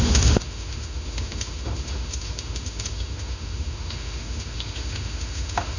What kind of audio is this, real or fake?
fake